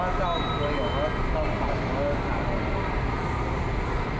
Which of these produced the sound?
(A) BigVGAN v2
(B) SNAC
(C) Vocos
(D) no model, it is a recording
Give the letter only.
D